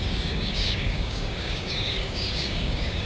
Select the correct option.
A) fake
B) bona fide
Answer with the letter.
A